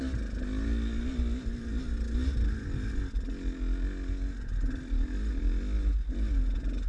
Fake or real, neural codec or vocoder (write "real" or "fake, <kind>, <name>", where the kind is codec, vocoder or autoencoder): real